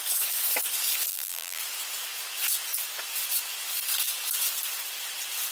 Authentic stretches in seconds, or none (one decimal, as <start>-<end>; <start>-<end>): 0.0-1.1; 1.6-5.5